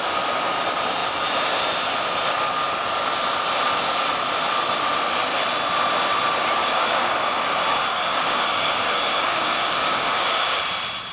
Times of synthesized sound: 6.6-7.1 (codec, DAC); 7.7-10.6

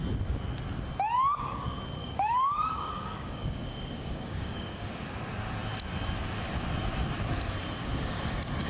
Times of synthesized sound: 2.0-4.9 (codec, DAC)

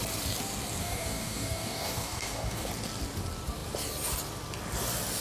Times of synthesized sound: 0.8-2.7 (codec, DAC)

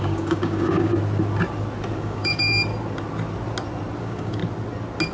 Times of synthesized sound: 0.0-0.9 (codec, DAC); 2.0-2.7; 4.0-4.4

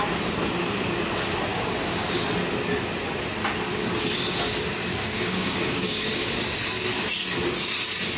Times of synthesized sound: 1.5-2.2 (codec, DAC); 4.9-6.3

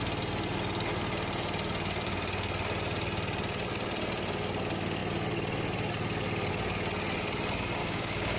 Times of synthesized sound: 7.8-8.4 (codec, DAC)

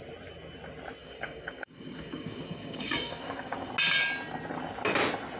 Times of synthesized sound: 1.0-3.7 (codec, DAC)